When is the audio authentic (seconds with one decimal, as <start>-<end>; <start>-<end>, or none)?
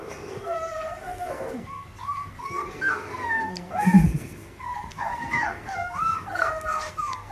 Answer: none